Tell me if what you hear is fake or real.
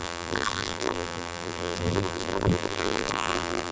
fake